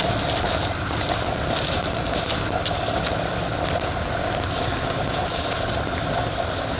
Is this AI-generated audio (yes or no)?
no